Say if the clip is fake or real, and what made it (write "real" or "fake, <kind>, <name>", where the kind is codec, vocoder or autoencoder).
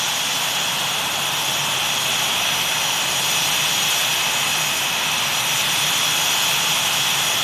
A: real